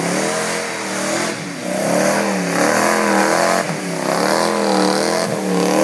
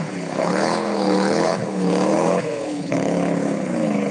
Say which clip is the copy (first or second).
second